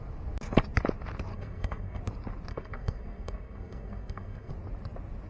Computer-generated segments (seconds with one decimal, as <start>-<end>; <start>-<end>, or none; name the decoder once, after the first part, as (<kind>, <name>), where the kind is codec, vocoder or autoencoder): 1.3-2.0 (codec, SNAC); 2.5-4.5